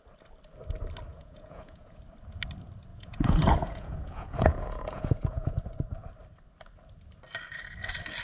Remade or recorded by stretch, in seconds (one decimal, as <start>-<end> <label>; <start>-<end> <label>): 0.0-1.1 recorded; 1.1-2.0 remade; 2.0-2.9 recorded; 2.9-5.6 remade; 5.6-8.2 recorded